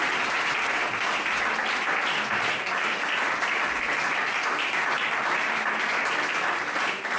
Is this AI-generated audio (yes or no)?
no